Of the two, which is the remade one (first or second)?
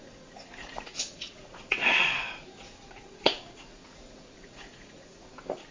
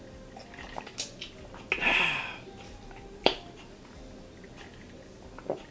first